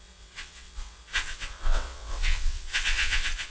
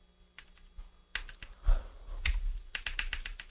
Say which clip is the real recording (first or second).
second